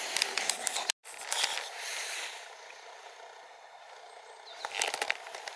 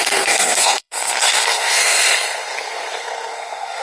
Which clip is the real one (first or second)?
first